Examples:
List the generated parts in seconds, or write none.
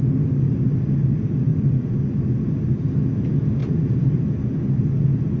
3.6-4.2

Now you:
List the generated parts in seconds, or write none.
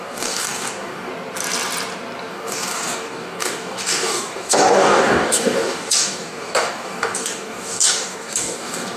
0.0-1.1; 2.3-9.0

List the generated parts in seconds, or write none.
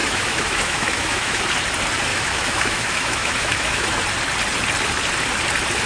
0.0-1.4; 2.1-4.0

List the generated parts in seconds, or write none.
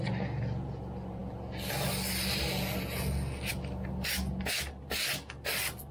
none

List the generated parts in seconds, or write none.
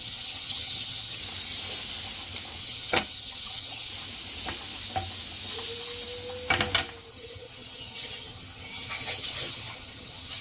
0.0-1.2; 2.6-3.9; 7.1-10.4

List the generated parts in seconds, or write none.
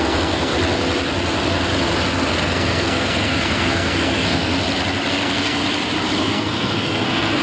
0.0-0.5; 2.3-4.5; 5.1-5.6; 6.2-7.4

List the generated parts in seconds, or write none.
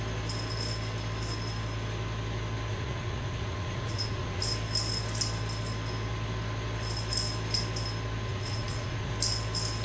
2.7-4.4; 8.3-9.1